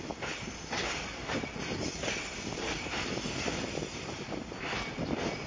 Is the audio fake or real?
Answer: real